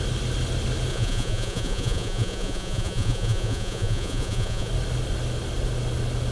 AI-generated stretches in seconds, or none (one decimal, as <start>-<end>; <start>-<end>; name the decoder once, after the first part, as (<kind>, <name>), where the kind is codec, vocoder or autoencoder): 0.9-4.7 (vocoder, Vocos)